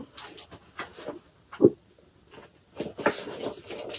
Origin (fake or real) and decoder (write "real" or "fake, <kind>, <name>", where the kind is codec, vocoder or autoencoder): real